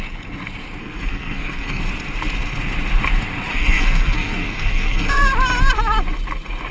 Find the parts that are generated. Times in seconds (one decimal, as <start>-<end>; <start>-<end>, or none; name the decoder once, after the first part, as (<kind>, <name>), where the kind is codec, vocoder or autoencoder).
0.8-1.8 (codec, SNAC); 3.5-5.3